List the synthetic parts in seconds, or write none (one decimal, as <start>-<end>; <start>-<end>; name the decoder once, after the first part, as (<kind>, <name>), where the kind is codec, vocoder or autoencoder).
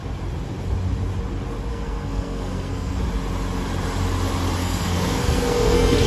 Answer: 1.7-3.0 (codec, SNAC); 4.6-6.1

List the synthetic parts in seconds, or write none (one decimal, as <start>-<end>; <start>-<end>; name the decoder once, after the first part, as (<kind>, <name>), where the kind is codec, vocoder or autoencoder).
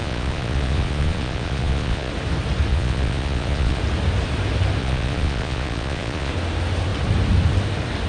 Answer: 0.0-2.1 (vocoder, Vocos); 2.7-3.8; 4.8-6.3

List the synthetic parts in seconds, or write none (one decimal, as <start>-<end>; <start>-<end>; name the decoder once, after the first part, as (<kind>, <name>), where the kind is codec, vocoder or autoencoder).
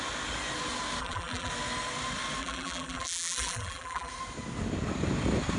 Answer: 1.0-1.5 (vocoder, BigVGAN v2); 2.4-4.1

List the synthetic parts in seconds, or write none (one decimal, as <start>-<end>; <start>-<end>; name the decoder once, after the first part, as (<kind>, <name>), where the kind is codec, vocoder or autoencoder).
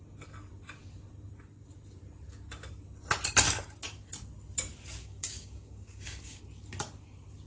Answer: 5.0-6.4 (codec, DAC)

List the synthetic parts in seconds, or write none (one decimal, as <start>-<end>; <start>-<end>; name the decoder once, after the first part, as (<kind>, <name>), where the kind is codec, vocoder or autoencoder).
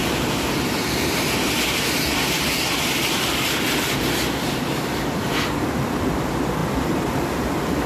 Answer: none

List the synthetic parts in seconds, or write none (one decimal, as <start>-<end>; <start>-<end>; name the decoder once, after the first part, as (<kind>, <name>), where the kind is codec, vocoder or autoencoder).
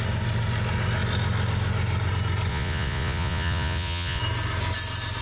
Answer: 2.5-4.2 (vocoder, Vocos)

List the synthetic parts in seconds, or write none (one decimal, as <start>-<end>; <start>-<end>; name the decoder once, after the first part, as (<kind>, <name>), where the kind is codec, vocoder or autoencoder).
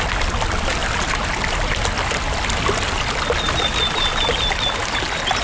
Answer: none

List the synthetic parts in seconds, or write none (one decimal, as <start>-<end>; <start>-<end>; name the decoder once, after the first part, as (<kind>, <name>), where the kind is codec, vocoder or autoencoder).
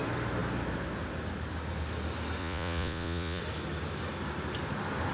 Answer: 2.4-3.4 (vocoder, Vocos)